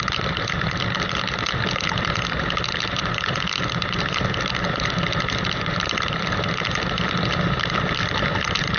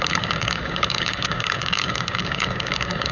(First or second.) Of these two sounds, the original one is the first